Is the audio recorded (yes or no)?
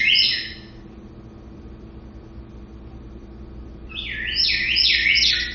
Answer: yes